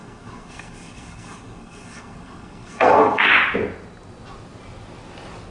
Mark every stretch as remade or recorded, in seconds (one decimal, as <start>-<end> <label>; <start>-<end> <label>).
0.0-3.3 remade; 3.3-5.5 recorded